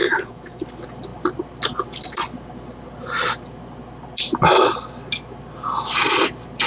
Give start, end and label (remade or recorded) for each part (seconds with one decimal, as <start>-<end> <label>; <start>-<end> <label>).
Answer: 0.0-0.6 remade; 0.6-6.7 recorded